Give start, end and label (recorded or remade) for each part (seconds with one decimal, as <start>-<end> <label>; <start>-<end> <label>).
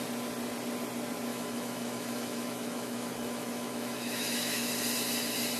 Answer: 0.0-1.3 recorded; 1.3-4.7 remade; 4.7-5.6 recorded